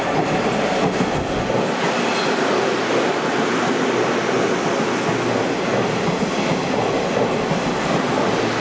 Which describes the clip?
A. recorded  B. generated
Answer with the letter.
A